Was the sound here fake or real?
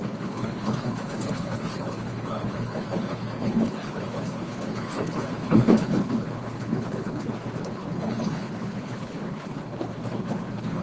fake